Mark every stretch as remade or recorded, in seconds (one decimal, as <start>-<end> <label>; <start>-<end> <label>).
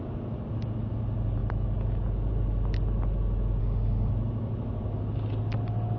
0.0-3.6 recorded; 3.6-4.1 remade; 4.1-6.0 recorded